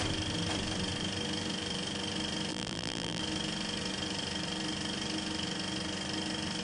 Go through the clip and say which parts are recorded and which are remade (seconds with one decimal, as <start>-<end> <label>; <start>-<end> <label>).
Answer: 0.0-2.5 recorded; 2.5-3.2 remade; 3.2-6.6 recorded